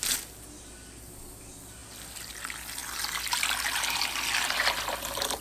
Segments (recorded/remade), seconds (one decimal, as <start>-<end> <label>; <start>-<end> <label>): 0.0-5.4 recorded